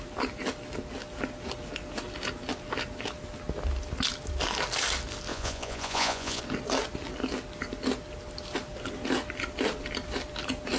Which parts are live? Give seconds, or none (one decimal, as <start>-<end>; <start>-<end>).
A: 0.0-5.3; 6.4-10.8